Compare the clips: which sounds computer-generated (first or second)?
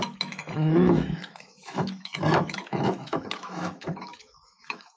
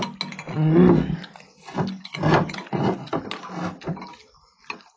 first